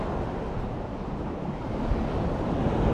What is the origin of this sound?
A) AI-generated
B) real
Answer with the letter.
B